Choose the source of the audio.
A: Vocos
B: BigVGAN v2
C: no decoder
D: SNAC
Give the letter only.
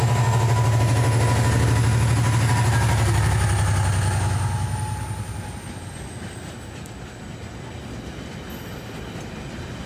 C